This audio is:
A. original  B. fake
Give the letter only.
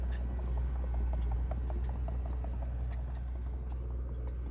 A